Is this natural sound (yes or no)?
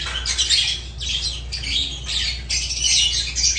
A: yes